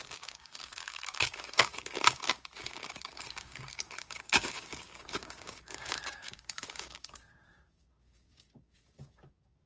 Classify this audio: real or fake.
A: fake